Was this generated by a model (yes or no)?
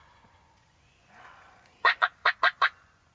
yes